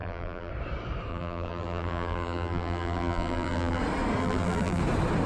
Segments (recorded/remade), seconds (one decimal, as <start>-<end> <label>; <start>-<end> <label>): 0.0-0.5 remade; 0.5-1.1 recorded; 1.1-3.8 remade; 3.8-4.2 recorded; 4.2-4.8 remade; 4.8-5.3 recorded